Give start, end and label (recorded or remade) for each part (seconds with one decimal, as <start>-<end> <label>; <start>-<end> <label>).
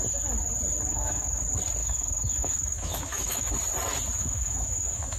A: 0.0-0.9 recorded; 0.9-1.4 remade; 1.4-1.8 recorded; 1.8-3.5 remade; 3.5-4.2 recorded; 4.2-5.2 remade